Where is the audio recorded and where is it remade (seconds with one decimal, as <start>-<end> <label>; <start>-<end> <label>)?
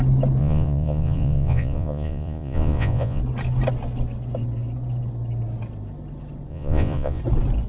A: 0.0-0.4 recorded; 0.4-3.2 remade; 3.2-6.5 recorded; 6.5-7.2 remade; 7.2-7.7 recorded